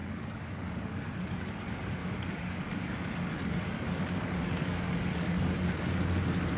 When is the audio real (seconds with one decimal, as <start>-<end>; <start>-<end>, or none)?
1.5-2.0; 6.0-6.6